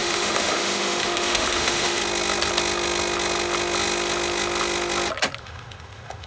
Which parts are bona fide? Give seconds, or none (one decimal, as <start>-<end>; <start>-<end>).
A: 2.0-5.4